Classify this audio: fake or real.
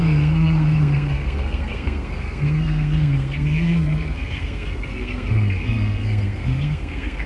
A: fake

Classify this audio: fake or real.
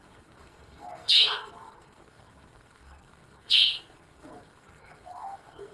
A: fake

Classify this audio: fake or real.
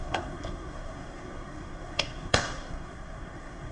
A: fake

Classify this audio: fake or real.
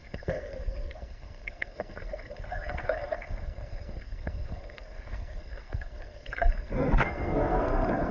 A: fake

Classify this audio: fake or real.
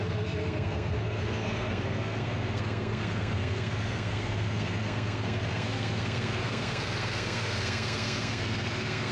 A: fake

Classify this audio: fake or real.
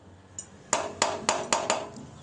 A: real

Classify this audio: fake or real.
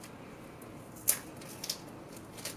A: real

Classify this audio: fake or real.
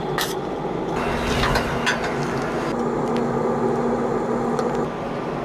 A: real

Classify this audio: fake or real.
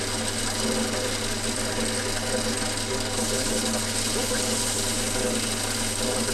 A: real